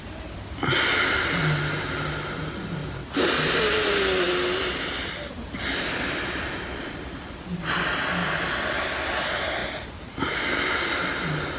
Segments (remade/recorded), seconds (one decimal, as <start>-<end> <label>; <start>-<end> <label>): 0.0-11.6 recorded